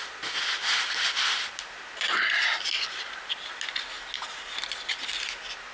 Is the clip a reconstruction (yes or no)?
no